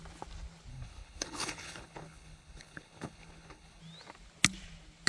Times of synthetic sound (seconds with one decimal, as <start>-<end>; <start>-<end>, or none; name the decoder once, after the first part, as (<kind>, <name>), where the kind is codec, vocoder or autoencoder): 0.7-3.8 (codec, HILCodec)